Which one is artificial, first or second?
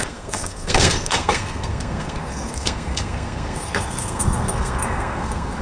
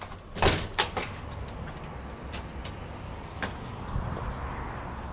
first